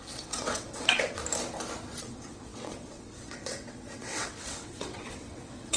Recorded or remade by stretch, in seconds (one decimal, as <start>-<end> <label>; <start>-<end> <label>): 0.0-1.2 remade; 1.2-2.0 recorded; 2.0-5.8 remade